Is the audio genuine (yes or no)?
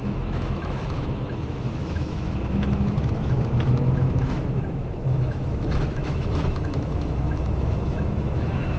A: no